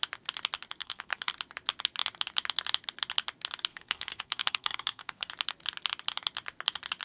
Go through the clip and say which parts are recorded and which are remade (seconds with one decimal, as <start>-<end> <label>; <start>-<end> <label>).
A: 0.0-0.8 recorded; 0.8-1.3 remade; 1.3-3.7 recorded; 3.7-5.3 remade; 5.3-7.0 recorded